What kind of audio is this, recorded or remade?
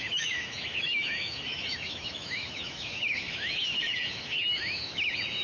remade